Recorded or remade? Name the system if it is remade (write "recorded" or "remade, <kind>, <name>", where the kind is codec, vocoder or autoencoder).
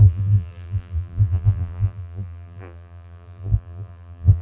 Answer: remade, vocoder, BigVGAN v2